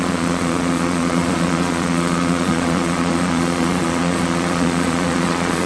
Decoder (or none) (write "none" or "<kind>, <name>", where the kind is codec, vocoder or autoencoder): vocoder, Vocos